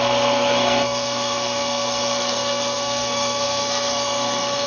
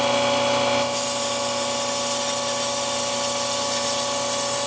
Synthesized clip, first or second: first